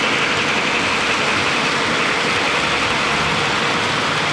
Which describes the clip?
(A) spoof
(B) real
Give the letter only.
B